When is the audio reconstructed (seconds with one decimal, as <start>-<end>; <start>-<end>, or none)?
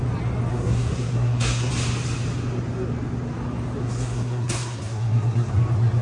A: 0.5-1.7; 3.8-5.5